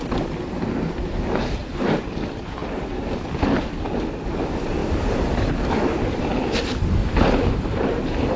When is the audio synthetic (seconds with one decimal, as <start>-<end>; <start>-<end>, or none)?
1.6-2.2; 4.8-5.5; 7.0-7.8

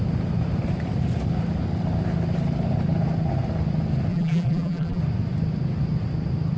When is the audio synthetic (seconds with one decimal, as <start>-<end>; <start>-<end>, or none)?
4.1-5.0

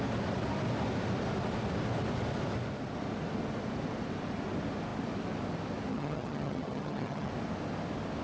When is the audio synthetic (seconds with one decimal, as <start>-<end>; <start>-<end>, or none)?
5.9-7.3

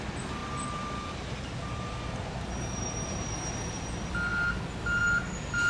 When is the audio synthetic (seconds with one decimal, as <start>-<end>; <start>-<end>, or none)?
none